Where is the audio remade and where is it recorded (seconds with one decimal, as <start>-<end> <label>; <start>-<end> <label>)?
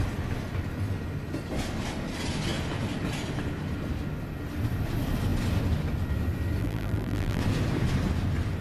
0.0-6.6 recorded; 6.6-7.4 remade; 7.4-8.6 recorded